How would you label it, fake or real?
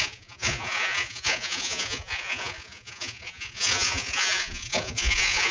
fake